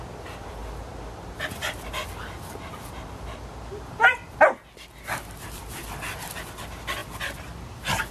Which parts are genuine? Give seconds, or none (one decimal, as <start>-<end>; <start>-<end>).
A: 0.6-5.4